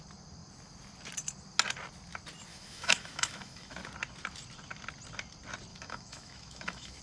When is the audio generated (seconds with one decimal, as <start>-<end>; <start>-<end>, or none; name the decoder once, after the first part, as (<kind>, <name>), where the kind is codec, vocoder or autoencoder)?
2.5-3.8 (autoencoder, DAC-VAE); 5.7-7.0